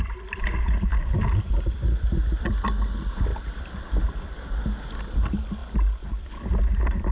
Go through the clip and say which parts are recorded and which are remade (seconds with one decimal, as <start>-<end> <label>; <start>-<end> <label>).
0.0-7.1 recorded

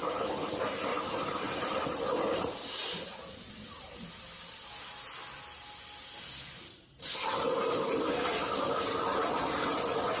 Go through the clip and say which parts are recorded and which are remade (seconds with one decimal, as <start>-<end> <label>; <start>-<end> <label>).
0.0-10.2 recorded

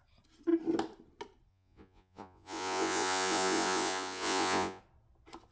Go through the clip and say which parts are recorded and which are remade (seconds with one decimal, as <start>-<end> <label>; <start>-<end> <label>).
0.0-1.5 recorded; 1.5-4.8 remade; 4.8-5.5 recorded

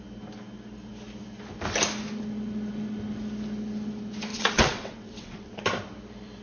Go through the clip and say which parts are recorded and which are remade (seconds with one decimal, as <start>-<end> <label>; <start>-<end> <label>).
0.0-4.3 recorded; 4.3-5.6 remade; 5.6-6.4 recorded